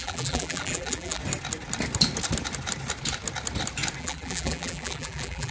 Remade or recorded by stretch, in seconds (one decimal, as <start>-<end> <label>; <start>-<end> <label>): 0.0-1.2 remade; 1.2-4.0 recorded; 4.0-5.5 remade